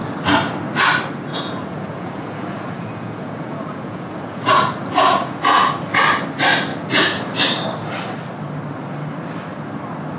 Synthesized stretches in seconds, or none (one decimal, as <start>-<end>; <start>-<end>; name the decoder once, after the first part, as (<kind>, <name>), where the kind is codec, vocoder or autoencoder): 1.3-6.0 (vocoder, Vocos); 6.7-7.2